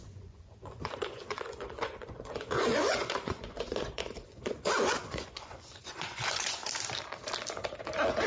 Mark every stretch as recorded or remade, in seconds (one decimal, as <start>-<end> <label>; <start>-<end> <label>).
0.0-6.6 remade; 6.6-8.3 recorded